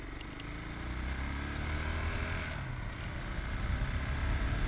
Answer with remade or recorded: recorded